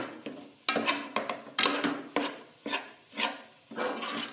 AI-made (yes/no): no